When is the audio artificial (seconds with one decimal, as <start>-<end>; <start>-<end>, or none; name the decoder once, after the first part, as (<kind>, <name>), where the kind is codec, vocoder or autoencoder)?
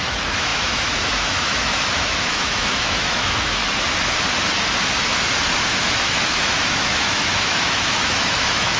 0.0-3.6 (autoencoder, DAC-VAE); 6.0-8.8